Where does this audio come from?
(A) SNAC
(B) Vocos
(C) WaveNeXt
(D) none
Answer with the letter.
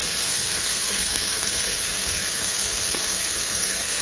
A